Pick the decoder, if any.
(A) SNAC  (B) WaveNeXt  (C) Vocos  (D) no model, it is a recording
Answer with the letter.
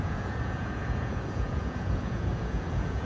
C